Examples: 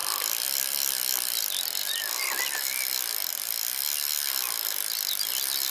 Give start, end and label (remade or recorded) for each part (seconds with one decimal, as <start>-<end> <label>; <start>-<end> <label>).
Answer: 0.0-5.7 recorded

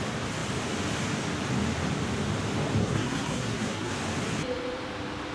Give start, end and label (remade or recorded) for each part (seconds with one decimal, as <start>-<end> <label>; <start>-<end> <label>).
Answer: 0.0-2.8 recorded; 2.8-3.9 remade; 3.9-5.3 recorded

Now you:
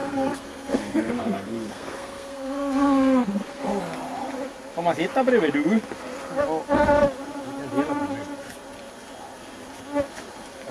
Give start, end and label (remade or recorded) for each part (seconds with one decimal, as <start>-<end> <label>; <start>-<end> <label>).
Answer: 0.0-3.8 remade; 3.8-10.7 recorded

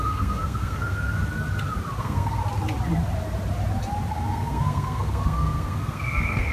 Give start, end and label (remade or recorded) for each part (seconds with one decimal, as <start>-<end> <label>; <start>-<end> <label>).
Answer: 0.0-1.2 remade; 1.2-2.0 recorded; 2.0-2.4 remade; 2.4-4.1 recorded; 4.1-6.5 remade

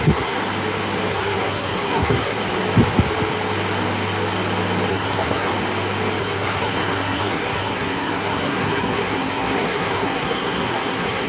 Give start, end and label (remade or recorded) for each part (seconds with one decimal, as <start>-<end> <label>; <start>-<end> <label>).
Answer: 0.0-0.4 remade; 0.4-1.1 recorded; 1.1-2.4 remade; 2.4-4.9 recorded; 4.9-5.5 remade; 5.5-6.2 recorded; 6.2-11.3 remade

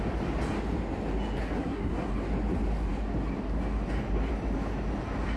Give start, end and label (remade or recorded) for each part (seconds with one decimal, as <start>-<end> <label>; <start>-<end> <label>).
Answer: 0.0-1.4 recorded; 1.4-2.1 remade; 2.1-5.4 recorded

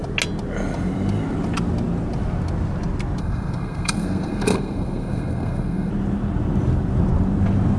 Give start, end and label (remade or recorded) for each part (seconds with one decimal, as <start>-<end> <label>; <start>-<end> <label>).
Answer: 0.0-3.2 recorded; 3.2-5.9 remade; 5.9-7.8 recorded

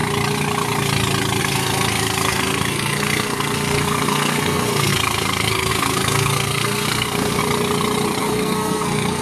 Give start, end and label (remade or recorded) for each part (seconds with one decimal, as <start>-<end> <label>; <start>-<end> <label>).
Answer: 0.0-1.4 recorded; 1.4-7.4 remade; 7.4-8.2 recorded; 8.2-9.2 remade